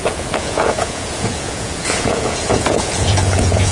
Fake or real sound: fake